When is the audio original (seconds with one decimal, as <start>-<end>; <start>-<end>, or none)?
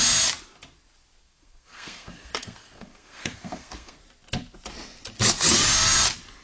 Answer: 0.0-1.2; 4.0-6.4